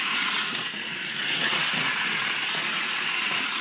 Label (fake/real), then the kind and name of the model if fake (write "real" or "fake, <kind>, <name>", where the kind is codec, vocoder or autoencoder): fake, vocoder, Vocos